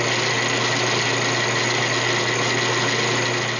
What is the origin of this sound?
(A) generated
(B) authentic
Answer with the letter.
B